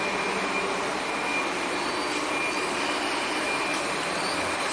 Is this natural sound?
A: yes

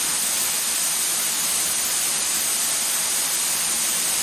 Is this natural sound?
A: yes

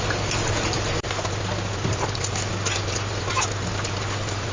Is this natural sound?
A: yes